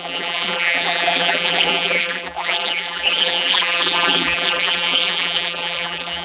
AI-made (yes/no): yes